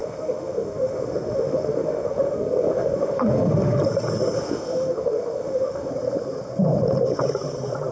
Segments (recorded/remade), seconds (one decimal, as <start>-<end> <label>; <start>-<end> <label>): 0.0-3.8 remade; 3.8-4.4 recorded; 4.4-5.9 remade; 5.9-7.9 recorded

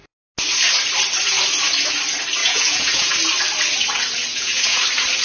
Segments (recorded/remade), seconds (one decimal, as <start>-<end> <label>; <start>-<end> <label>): 0.0-2.4 recorded; 2.4-3.1 remade; 3.1-4.3 recorded; 4.3-4.8 remade; 4.8-5.2 recorded

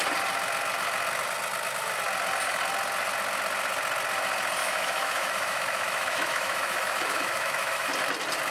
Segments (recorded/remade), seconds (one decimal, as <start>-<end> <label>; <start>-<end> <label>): 0.0-4.6 recorded; 4.6-7.9 remade; 7.9-8.5 recorded

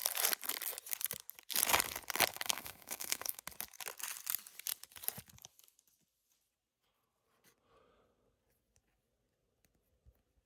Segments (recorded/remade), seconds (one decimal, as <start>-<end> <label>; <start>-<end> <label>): 0.0-2.3 recorded; 2.3-3.4 remade; 3.4-10.5 recorded

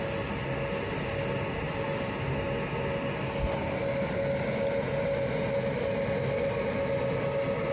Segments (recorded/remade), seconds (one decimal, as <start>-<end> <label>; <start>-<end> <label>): 0.0-7.7 recorded